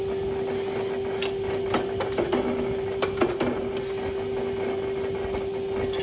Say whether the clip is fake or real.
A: real